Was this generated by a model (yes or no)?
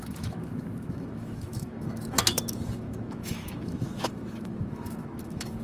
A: yes